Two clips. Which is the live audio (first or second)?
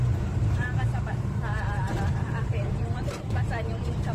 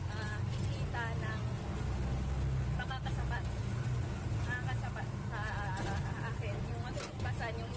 second